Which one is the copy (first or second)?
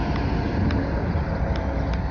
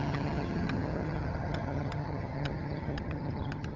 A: second